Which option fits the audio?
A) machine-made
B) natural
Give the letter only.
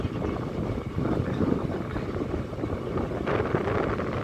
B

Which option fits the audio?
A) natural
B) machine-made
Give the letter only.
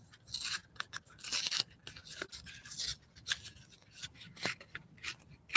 A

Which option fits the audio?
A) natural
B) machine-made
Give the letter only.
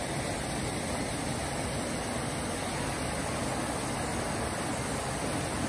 A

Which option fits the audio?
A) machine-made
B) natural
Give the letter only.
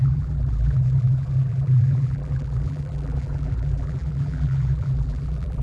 A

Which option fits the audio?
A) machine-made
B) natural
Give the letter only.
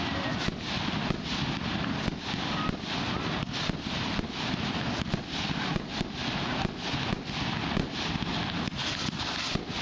B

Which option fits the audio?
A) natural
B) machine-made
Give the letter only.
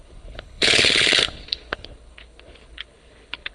B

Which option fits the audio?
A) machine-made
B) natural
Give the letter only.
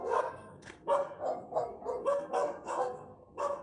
A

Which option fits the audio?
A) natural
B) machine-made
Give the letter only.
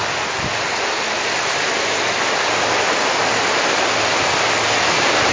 A